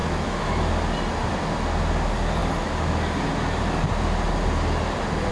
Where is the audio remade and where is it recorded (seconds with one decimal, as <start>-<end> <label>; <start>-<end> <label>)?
0.0-0.7 remade; 0.7-5.3 recorded